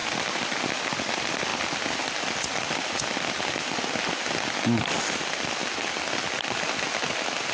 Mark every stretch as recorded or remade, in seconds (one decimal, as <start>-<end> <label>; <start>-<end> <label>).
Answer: 0.0-7.5 recorded